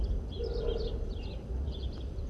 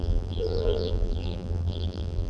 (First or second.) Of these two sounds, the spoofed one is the second